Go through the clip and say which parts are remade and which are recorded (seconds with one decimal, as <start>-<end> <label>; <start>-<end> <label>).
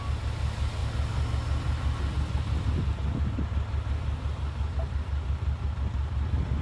0.0-6.6 recorded